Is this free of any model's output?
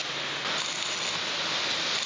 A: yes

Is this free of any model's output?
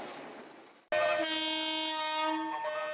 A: yes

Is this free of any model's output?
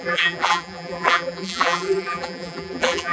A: no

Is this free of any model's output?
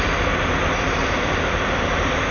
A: no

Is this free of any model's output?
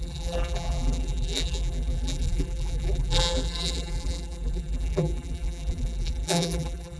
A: no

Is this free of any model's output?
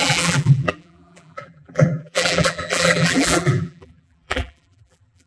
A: no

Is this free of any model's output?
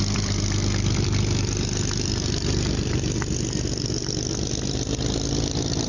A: no